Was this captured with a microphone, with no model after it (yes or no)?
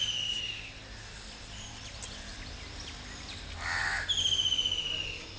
yes